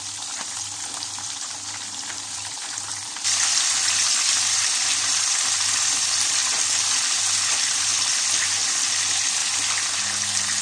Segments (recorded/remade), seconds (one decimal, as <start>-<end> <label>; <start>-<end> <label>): 0.0-6.4 remade; 6.4-7.5 recorded; 7.5-9.4 remade; 9.4-10.6 recorded